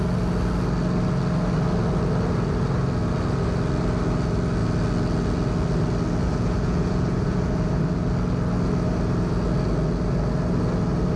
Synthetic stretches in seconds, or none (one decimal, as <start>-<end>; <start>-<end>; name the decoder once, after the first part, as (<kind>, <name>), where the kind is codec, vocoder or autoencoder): 6.2-7.8 (vocoder, Vocos)